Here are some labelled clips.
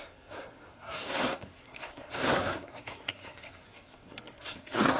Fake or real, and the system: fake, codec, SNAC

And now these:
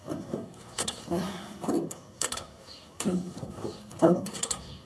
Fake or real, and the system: fake, codec, SNAC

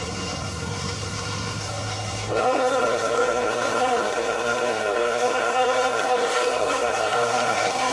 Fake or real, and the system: fake, codec, SNAC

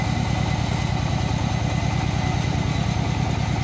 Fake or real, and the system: real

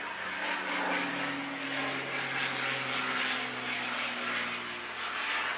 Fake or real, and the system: real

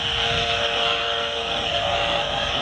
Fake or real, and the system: fake, codec, SNAC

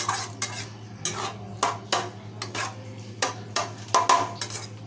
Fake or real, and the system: real